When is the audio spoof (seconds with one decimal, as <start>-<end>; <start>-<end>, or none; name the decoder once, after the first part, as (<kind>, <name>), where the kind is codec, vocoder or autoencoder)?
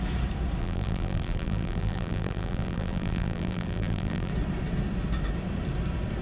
0.6-4.3 (vocoder, BigVGAN v2)